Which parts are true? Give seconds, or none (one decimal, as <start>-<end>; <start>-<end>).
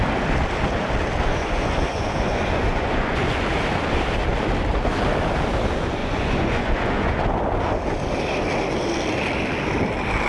0.0-1.3; 3.5-6.0; 7.2-10.3